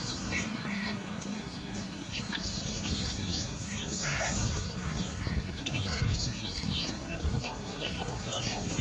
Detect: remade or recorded remade